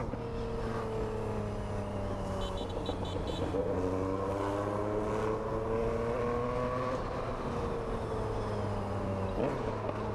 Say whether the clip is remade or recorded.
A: recorded